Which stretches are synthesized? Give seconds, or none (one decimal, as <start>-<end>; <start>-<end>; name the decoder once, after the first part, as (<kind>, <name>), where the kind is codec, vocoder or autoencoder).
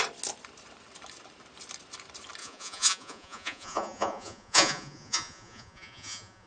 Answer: 2.4-6.5 (vocoder, Vocos)